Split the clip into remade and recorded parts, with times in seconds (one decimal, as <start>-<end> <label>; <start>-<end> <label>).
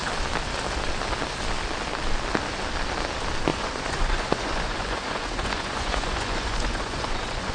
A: 0.0-3.5 recorded; 3.5-7.5 remade